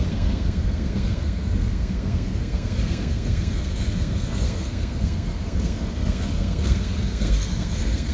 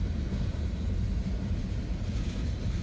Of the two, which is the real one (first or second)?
second